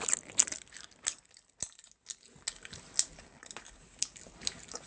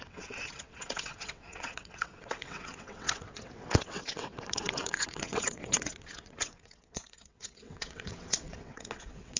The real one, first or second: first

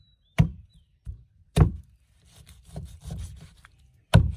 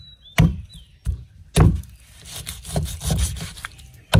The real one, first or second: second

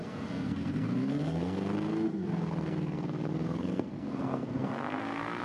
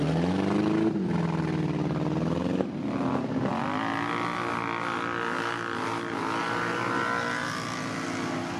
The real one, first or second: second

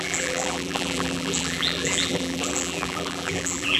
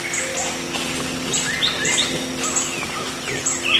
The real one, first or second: second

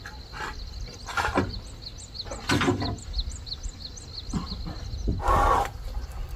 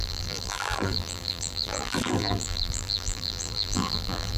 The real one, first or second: first